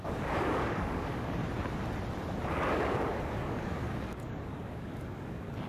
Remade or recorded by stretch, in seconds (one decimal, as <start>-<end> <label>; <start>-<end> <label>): 0.0-1.4 remade; 1.4-2.5 recorded; 2.5-5.7 remade